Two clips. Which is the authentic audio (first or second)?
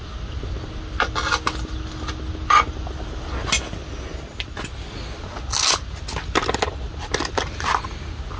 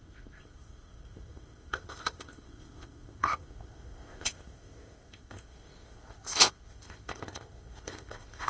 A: first